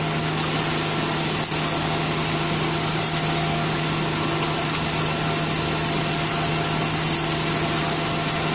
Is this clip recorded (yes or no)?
yes